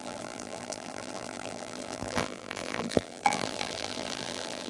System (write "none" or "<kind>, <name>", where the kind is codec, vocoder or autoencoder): vocoder, BigVGAN v2